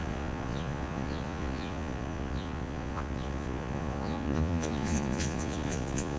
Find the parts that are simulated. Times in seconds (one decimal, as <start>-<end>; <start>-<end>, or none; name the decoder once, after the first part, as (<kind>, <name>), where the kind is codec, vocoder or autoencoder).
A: 0.0-6.2 (vocoder, Vocos)